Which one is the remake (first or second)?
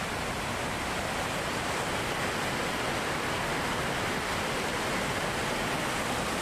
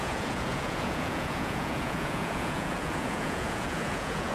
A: second